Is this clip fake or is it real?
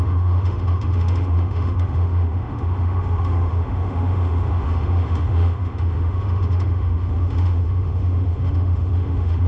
fake